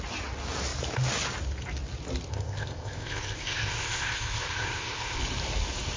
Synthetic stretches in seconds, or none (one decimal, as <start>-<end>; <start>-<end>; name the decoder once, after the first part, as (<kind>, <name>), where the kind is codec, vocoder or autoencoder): 2.3-5.2 (codec, ZipCodec)